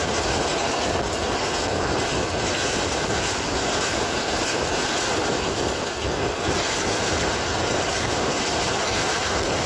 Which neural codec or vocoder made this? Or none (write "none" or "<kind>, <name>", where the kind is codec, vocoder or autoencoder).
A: none